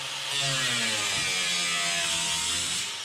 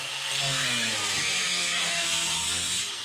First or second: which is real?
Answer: first